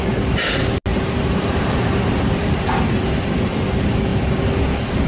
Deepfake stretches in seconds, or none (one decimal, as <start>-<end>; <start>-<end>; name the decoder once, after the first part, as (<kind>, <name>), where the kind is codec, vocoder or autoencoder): 0.9-3.1 (vocoder, BigVGAN v2)